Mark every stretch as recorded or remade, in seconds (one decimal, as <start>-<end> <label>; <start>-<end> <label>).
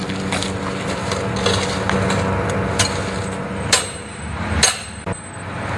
0.0-5.8 recorded